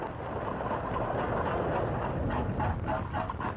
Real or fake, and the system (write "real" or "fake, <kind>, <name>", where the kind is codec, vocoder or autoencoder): real